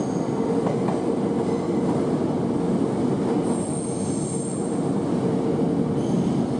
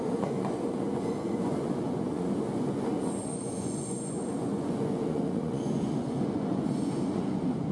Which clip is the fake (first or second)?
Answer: second